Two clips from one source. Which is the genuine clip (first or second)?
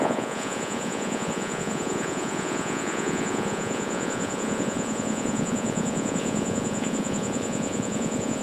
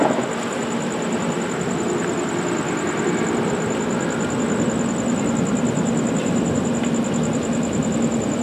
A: second